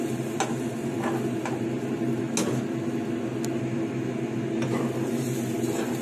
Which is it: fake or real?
real